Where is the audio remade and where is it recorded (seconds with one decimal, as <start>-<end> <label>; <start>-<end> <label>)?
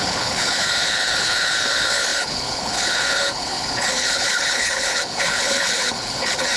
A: 0.0-6.6 remade